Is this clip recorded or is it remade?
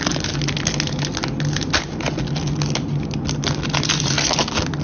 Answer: recorded